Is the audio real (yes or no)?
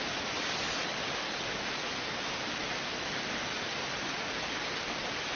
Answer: yes